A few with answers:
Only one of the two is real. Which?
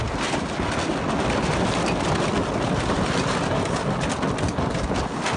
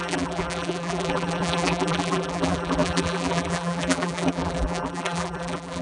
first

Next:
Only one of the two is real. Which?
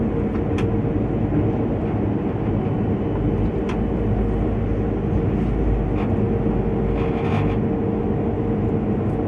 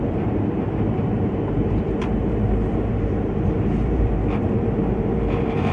first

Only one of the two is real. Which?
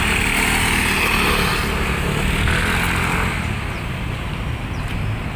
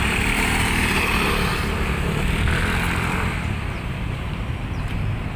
first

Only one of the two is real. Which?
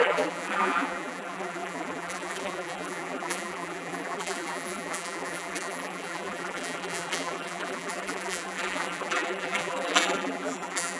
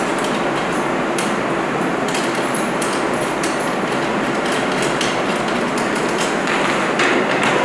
second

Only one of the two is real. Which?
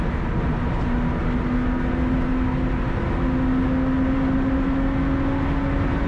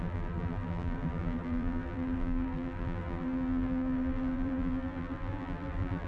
first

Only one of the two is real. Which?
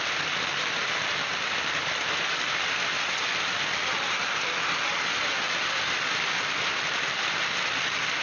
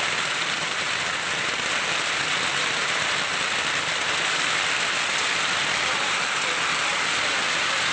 first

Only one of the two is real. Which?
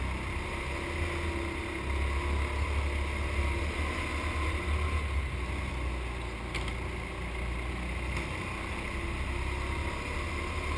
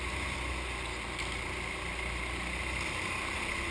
first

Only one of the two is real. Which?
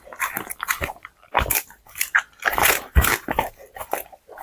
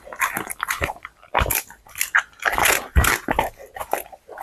second